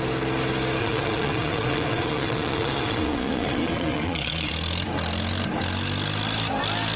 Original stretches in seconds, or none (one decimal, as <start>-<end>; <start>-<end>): 0.0-0.8; 4.5-7.0